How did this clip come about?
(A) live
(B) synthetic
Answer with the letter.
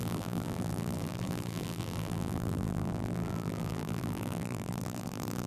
B